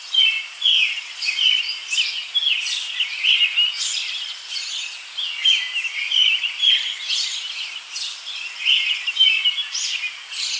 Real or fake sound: real